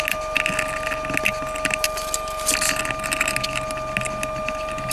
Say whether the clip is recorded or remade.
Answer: recorded